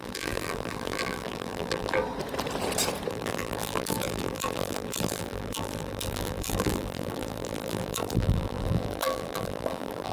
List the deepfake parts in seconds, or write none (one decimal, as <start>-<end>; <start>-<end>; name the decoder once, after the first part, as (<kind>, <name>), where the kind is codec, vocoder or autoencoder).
0.0-2.0 (vocoder, BigVGAN v2); 3.1-10.1